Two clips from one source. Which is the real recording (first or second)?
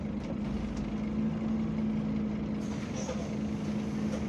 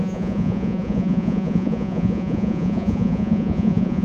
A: first